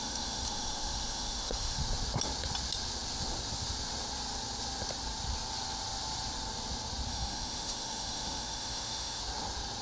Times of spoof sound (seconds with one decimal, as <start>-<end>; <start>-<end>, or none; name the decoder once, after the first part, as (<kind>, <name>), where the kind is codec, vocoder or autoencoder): 0.0-1.8 (autoencoder, DAC-VAE); 7.1-9.2